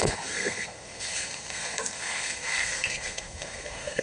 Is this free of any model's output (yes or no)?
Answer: no